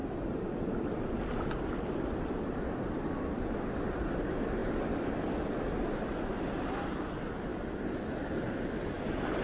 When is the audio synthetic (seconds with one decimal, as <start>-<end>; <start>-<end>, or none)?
2.0-9.4